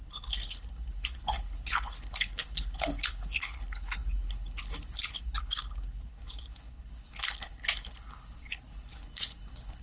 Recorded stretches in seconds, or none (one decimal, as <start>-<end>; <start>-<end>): none